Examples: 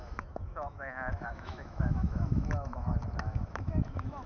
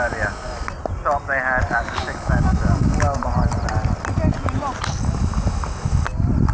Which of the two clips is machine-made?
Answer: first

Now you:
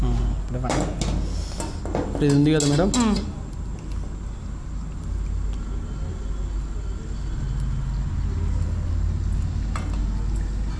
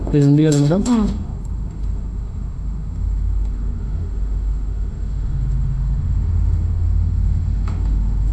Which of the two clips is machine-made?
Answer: second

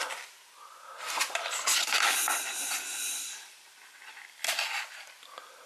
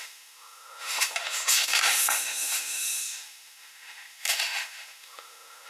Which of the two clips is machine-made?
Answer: second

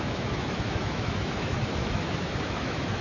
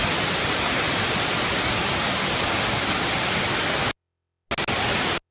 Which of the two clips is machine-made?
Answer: first